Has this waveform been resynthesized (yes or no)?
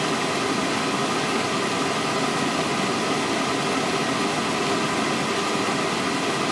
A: no